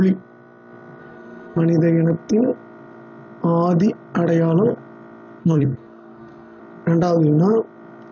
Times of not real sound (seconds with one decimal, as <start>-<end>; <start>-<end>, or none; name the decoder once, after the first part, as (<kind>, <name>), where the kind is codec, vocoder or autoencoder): 1.0-1.6 (codec, SNAC); 5.4-6.6